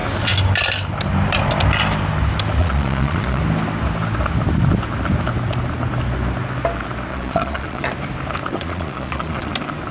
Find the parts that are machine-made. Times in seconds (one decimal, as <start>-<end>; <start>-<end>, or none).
2.6-3.4; 7.1-7.9; 8.5-9.5